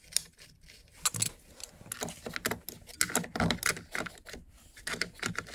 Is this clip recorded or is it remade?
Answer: recorded